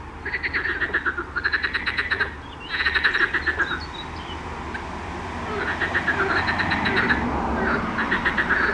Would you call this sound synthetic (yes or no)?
no